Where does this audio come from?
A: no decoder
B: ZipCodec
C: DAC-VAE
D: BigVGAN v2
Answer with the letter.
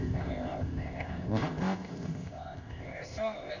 B